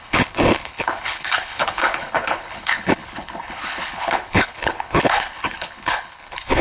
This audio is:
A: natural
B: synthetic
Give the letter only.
B